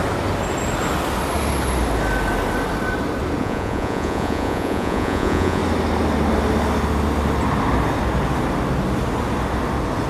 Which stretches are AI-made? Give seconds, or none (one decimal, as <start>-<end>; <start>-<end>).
3.4-5.6